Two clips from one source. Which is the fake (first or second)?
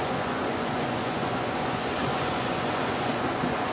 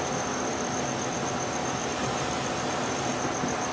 first